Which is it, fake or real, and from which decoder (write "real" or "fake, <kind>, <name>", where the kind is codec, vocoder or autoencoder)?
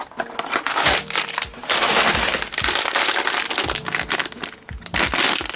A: real